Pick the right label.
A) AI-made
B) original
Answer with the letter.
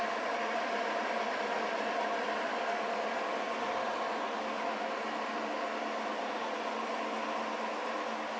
B